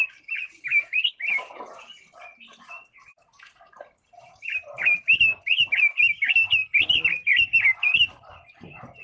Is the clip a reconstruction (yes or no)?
no